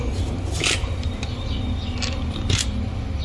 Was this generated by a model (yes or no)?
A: no